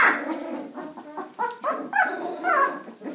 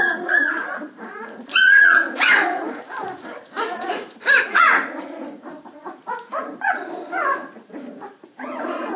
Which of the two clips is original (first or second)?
first